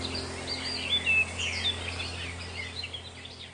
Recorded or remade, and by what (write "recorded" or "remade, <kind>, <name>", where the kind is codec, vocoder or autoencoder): recorded